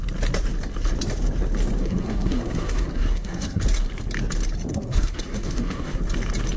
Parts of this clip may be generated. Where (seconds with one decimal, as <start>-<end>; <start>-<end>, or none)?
1.8-3.6; 4.7-6.0